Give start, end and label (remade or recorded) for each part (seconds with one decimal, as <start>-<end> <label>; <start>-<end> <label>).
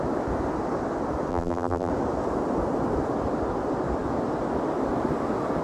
0.0-1.3 recorded; 1.3-1.9 remade; 1.9-5.6 recorded